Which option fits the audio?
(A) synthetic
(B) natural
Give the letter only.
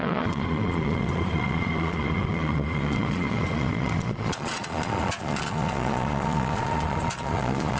A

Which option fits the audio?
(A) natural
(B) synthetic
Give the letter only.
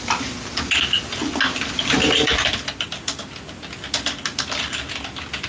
A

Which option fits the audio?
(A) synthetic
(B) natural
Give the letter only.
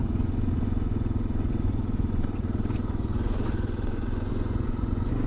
A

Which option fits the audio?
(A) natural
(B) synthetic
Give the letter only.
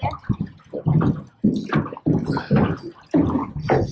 A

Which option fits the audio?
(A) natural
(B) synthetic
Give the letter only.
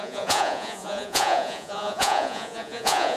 B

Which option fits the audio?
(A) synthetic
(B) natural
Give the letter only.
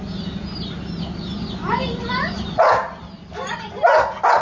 B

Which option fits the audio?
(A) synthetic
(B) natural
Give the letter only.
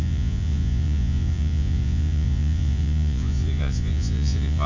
A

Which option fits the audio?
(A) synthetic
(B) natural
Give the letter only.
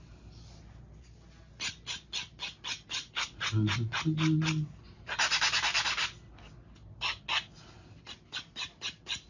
B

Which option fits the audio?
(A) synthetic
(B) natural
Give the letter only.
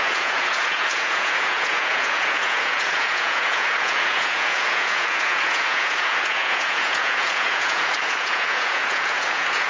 A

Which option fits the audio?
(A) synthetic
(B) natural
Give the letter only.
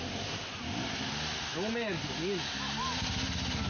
B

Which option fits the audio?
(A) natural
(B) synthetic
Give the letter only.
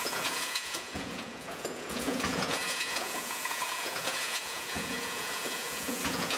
B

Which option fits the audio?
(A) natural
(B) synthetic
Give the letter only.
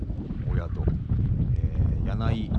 A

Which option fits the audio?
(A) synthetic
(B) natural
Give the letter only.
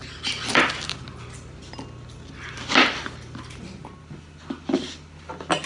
B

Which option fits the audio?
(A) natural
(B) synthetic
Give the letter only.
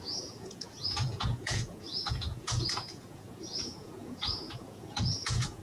B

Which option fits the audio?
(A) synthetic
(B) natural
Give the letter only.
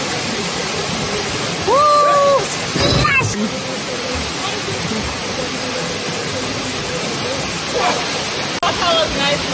B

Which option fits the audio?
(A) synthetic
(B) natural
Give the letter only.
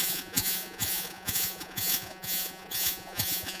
A